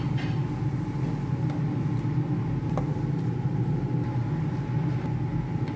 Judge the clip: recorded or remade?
recorded